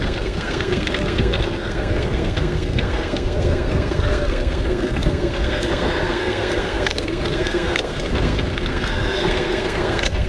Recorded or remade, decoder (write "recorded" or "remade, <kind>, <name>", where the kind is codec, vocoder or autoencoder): remade, codec, SNAC